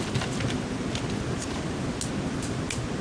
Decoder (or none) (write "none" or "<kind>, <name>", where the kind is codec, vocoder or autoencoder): none